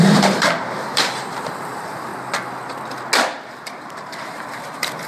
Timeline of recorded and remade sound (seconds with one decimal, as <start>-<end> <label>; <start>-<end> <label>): 0.0-2.1 remade; 2.1-3.5 recorded; 3.5-5.1 remade